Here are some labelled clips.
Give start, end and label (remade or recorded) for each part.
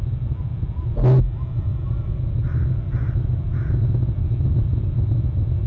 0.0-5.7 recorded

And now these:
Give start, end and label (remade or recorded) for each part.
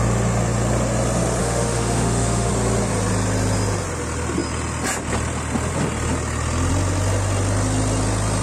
0.0-1.4 recorded; 1.4-2.5 remade; 2.5-8.4 recorded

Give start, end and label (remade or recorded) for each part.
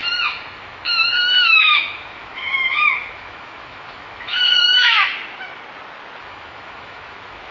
0.0-5.1 remade; 5.1-6.2 recorded; 6.2-7.5 remade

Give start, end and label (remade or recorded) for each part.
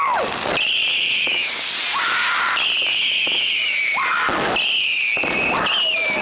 0.0-1.0 recorded; 1.0-1.6 remade; 1.6-2.9 recorded; 2.9-3.5 remade; 3.5-6.2 recorded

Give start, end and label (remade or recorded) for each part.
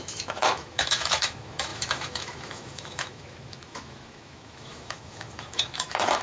0.0-6.2 remade